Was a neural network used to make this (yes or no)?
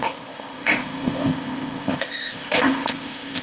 yes